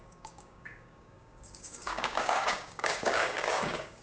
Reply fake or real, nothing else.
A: fake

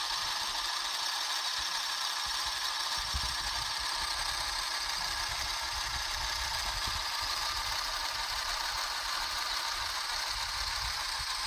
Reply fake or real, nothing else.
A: real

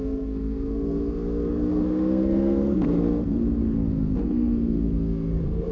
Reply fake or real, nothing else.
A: fake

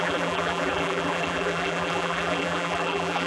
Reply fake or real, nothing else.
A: fake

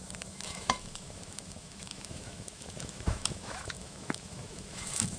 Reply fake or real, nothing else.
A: fake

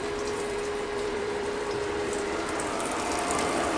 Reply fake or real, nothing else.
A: fake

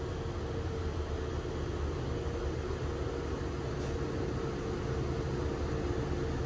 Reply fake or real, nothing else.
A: real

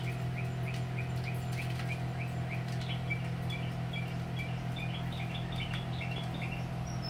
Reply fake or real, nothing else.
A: real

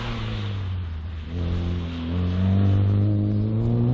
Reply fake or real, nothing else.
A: real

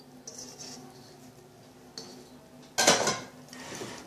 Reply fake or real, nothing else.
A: real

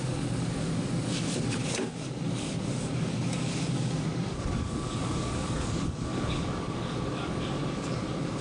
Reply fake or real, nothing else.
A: fake